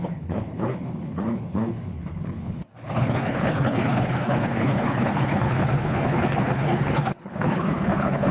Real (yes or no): no